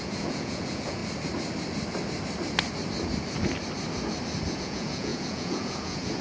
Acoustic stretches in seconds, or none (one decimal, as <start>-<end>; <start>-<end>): 1.0-4.5